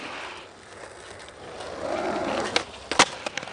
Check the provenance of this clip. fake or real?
real